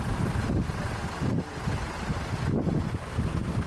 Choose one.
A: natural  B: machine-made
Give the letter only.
A